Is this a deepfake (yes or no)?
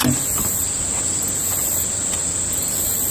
no